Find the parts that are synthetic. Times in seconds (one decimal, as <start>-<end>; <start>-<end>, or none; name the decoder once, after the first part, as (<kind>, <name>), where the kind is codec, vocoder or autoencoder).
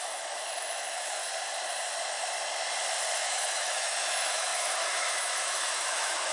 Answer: 0.0-1.2 (autoencoder, DAC-VAE); 3.2-6.3